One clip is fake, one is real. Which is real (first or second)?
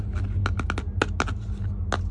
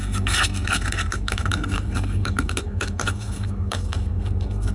first